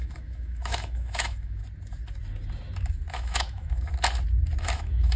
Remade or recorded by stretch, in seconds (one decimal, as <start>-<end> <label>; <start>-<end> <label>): 0.0-1.6 remade; 1.6-3.1 recorded; 3.1-3.9 remade; 3.9-4.6 recorded; 4.6-5.2 remade